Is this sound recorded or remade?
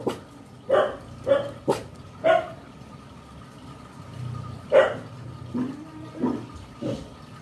recorded